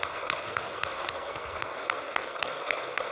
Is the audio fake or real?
fake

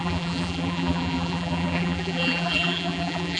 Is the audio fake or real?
fake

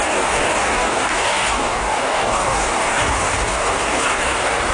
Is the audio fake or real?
fake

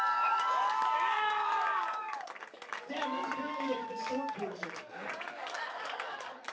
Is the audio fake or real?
fake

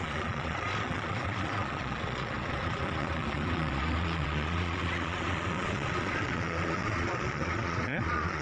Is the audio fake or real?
fake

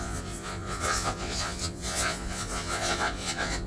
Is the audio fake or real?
fake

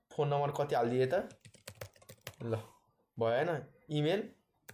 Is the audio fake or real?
real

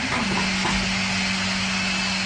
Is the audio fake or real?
real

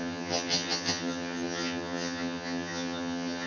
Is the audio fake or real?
fake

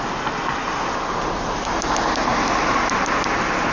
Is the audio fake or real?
real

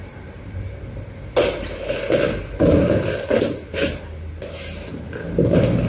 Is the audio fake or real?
real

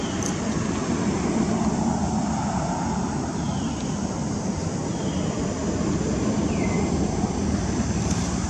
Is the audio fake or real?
fake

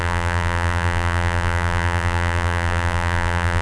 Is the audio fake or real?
fake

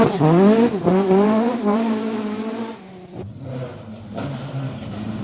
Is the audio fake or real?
fake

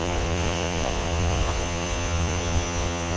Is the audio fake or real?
fake